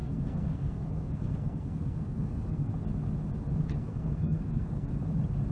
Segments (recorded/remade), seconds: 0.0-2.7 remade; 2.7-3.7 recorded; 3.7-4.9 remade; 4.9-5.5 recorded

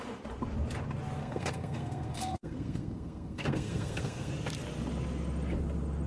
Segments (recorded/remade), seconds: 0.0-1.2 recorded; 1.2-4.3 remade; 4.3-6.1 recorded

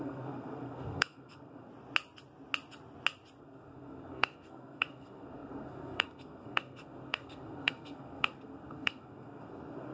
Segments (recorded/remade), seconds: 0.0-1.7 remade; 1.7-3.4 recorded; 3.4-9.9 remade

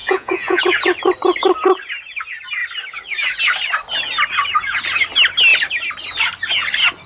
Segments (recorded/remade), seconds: 0.0-0.6 remade; 0.6-7.1 recorded